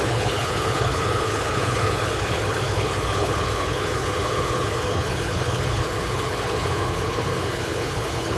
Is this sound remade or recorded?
remade